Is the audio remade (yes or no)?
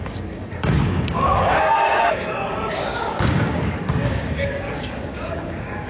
yes